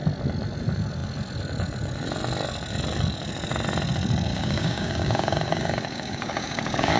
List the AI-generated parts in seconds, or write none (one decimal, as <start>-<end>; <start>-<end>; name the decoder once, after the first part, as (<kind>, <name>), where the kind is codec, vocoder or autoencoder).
4.3-7.0 (codec, DAC)